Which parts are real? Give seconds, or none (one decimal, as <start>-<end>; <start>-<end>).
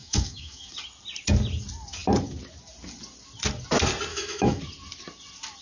0.7-4.1; 4.6-5.6